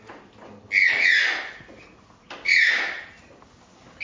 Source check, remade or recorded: recorded